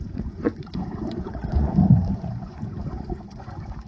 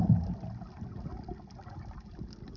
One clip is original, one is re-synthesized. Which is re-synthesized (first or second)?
first